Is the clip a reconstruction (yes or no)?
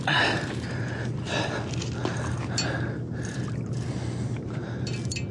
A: no